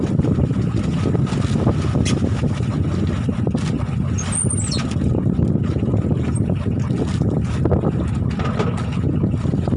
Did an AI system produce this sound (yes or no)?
no